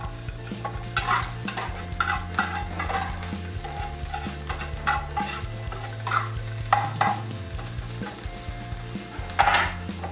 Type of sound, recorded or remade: recorded